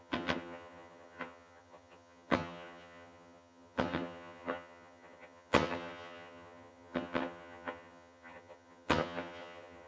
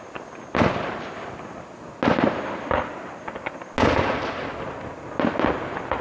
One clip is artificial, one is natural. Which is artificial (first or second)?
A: first